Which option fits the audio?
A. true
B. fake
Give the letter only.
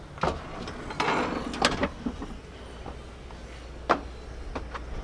A